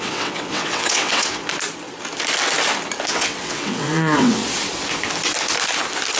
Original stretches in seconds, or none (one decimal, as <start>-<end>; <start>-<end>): 1.4-3.1; 4.4-6.2